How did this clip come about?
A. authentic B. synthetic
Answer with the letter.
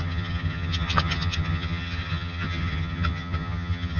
B